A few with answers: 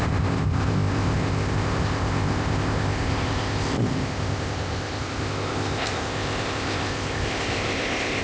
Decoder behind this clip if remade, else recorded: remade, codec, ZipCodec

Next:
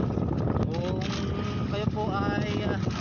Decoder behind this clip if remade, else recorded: recorded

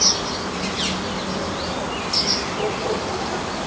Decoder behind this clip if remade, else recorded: recorded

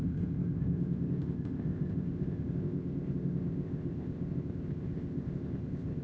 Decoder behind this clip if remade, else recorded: remade, codec, ZipCodec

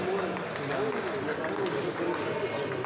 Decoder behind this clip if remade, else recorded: recorded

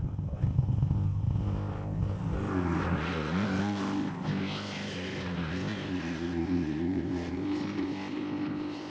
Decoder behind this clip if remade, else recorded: remade, codec, ZipCodec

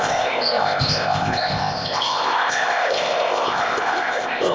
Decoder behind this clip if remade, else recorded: remade, codec, ZipCodec